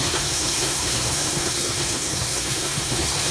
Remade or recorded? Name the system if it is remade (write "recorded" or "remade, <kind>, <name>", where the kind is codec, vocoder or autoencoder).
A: remade, codec, SNAC